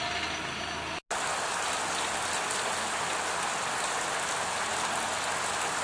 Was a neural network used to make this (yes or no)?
no